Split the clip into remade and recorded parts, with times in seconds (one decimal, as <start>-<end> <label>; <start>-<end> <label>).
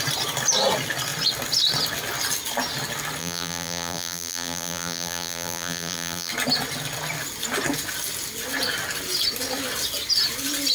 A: 0.0-3.2 recorded; 3.2-6.3 remade; 6.3-10.7 recorded